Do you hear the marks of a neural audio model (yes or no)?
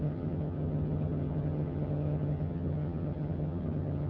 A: yes